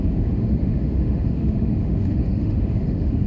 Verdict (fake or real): fake